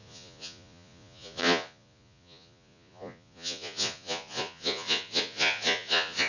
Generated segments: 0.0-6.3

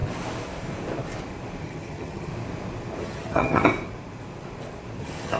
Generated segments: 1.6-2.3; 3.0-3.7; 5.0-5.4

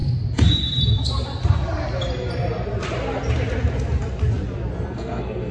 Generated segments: 4.7-5.5

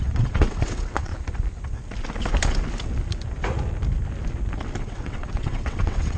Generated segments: 0.0-1.1; 4.8-6.2

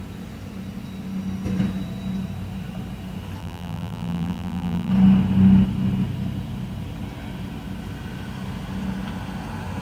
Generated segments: 3.4-4.9

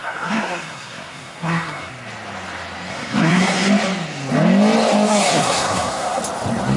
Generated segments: 0.0-1.9; 2.9-3.7; 5.1-6.2